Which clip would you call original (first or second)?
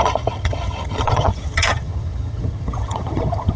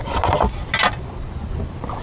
second